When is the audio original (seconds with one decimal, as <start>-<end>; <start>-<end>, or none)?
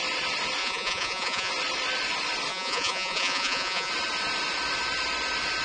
0.0-0.6; 1.5-2.5; 3.9-5.6